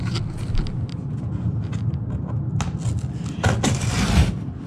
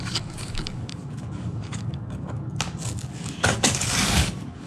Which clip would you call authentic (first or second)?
first